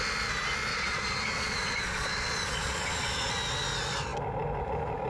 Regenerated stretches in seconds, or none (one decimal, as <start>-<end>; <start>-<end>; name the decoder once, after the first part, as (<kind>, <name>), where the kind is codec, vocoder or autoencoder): 0.7-3.3 (vocoder, Vocos)